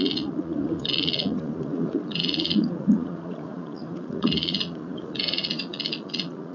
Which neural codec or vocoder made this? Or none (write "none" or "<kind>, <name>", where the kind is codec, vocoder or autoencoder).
vocoder, Vocos